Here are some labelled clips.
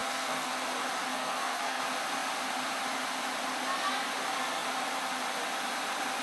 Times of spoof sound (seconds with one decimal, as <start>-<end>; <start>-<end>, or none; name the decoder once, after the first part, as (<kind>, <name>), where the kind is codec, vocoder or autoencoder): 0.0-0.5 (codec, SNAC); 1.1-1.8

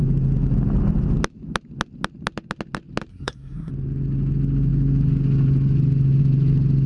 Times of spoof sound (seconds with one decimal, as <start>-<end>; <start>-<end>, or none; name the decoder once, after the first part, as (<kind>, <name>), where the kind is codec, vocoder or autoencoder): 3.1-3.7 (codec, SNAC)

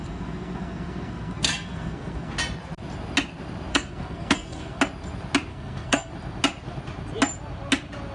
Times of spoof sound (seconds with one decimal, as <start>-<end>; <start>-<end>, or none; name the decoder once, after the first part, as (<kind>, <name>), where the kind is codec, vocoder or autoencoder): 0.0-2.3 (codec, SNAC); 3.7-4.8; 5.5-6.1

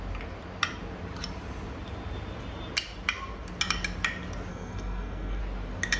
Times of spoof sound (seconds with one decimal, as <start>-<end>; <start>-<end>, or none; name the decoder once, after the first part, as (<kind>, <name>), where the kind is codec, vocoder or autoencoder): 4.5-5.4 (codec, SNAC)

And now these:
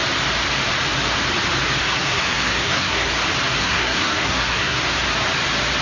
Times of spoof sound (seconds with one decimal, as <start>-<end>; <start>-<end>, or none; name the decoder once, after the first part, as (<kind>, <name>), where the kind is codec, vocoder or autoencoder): 1.8-3.1 (codec, SNAC); 3.6-4.8

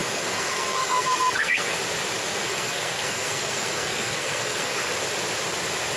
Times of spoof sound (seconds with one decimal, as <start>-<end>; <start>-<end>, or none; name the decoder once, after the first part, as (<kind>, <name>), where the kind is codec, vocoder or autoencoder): 0.0-1.8 (codec, SNAC); 2.2-4.9